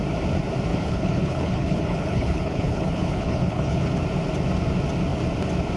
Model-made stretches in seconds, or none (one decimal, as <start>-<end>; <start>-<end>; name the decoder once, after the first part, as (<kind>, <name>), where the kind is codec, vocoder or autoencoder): 0.7-3.9 (codec, HILCodec)